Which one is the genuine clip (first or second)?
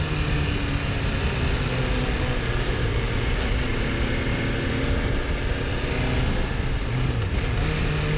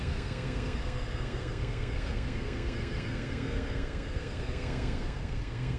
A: first